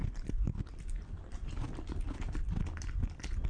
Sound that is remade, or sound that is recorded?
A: recorded